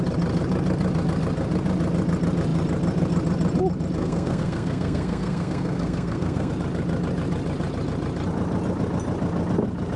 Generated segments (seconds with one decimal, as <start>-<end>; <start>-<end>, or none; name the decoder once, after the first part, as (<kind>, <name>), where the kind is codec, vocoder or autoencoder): 4.0-6.5 (codec, SNAC)